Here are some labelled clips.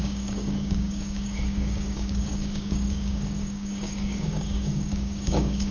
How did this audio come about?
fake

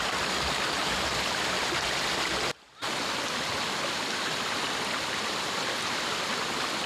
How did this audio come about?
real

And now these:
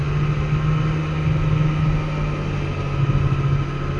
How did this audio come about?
real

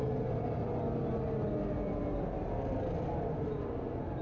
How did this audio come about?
real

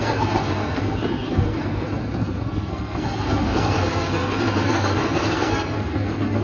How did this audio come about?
fake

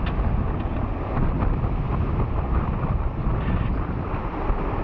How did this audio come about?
real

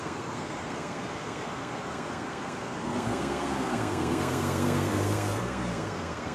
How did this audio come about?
fake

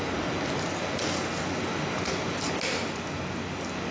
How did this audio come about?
real